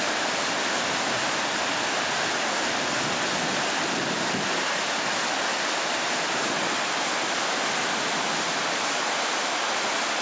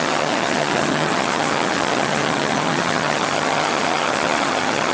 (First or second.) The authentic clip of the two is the first